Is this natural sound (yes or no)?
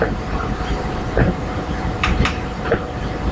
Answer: no